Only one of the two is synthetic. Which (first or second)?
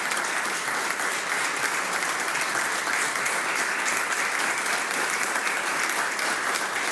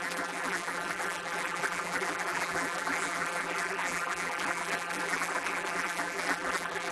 second